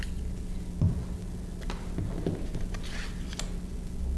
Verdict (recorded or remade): recorded